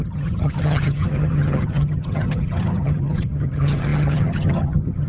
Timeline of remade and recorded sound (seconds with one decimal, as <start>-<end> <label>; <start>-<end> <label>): 0.0-5.1 remade